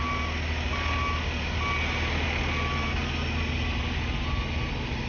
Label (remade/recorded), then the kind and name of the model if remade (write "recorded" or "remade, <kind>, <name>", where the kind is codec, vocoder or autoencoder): recorded